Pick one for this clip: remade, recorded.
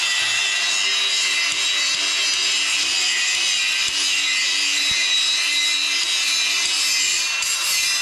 recorded